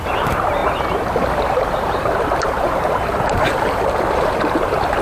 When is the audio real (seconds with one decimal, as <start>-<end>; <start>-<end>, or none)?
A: 0.6-1.5